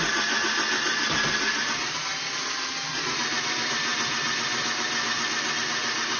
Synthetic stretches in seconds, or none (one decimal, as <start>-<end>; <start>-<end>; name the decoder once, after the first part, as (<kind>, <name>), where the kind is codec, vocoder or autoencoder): none